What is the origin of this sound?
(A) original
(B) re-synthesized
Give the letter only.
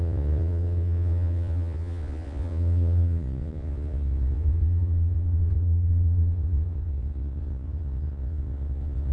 B